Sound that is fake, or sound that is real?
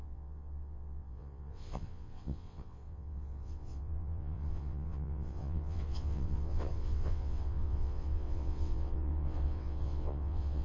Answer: fake